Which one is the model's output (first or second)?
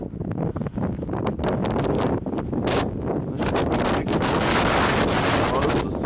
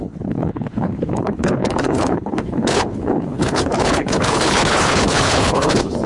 second